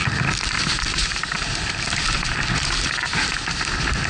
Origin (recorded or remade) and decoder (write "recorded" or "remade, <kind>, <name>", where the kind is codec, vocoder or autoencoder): recorded